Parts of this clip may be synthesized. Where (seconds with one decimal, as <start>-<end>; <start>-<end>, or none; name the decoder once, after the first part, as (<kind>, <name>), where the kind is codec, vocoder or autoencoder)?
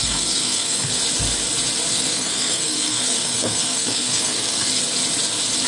0.0-1.0 (codec, SNAC); 1.9-4.7